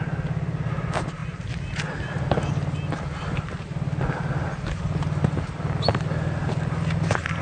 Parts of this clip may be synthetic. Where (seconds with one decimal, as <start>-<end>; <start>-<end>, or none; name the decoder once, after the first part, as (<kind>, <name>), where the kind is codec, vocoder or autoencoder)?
none